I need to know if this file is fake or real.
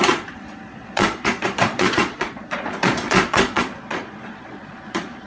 fake